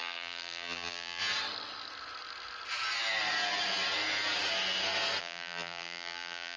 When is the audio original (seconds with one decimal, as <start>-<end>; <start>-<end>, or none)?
1.2-5.2